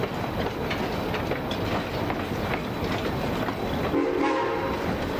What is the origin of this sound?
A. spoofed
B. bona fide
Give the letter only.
B